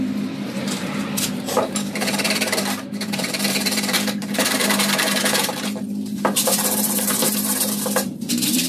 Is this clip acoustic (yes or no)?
no